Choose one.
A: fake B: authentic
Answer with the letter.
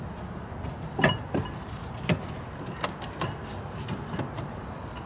B